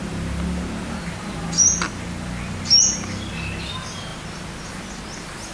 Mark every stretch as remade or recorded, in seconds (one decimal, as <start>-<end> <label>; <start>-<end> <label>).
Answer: 0.0-5.5 recorded